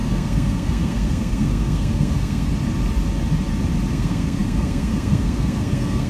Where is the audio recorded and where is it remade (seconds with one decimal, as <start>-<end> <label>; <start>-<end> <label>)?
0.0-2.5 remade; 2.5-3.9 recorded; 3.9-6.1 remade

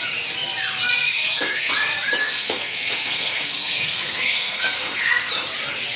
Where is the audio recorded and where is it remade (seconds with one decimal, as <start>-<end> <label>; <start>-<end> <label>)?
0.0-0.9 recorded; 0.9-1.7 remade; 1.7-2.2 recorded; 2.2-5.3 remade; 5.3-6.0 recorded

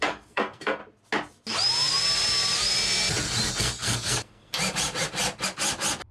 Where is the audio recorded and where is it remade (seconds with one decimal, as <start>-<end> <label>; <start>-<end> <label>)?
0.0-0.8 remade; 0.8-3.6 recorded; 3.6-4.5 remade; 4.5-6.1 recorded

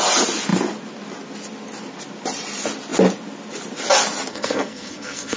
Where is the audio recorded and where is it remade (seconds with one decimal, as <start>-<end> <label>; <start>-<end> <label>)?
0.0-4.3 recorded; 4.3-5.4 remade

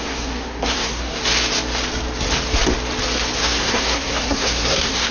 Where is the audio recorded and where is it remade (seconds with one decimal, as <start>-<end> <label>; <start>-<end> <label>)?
0.0-1.2 remade; 1.2-3.4 recorded; 3.4-5.1 remade

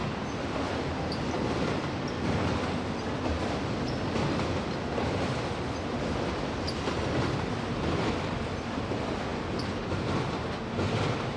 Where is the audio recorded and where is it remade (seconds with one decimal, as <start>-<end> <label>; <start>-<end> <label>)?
0.0-11.4 recorded